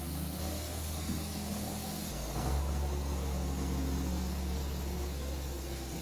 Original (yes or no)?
no